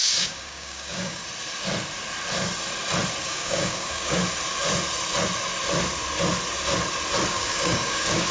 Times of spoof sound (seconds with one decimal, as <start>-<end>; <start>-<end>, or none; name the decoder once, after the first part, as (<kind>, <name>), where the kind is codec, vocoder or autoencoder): 0.0-1.2 (codec, DAC); 3.2-4.2; 7.3-8.3